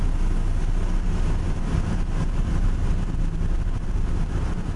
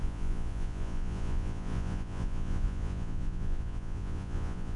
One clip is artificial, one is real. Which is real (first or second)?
first